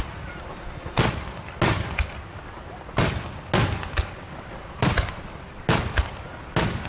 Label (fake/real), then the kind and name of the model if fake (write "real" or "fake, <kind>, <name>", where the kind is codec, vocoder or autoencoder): real